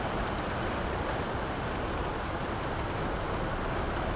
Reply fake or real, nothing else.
real